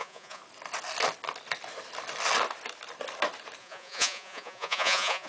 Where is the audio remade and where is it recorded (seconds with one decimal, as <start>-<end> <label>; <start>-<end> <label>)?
0.0-0.4 remade; 0.4-3.6 recorded; 3.6-5.3 remade